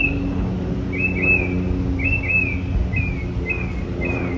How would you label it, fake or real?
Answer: real